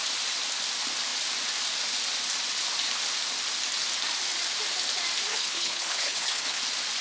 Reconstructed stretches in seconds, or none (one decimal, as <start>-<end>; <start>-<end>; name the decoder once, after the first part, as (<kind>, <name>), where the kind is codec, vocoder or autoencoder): 5.3-6.6 (codec, HILCodec)